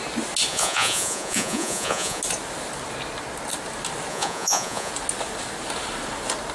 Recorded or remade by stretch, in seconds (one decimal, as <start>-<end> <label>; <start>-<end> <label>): 0.0-0.5 recorded; 0.5-2.2 remade; 2.2-4.1 recorded; 4.1-4.9 remade; 4.9-6.5 recorded